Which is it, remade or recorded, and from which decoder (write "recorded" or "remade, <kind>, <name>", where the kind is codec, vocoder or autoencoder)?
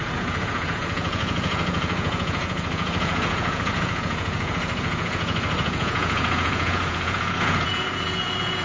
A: remade, vocoder, Vocos